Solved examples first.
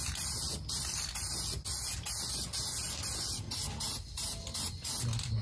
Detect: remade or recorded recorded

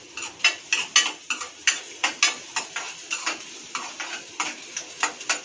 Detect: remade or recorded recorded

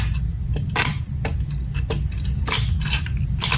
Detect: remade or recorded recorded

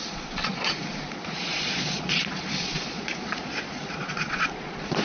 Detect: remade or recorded remade